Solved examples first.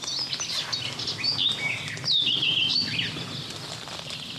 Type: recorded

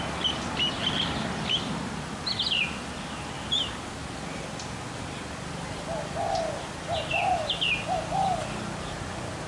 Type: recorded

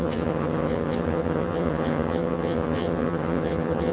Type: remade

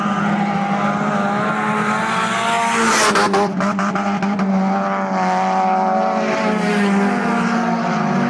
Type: recorded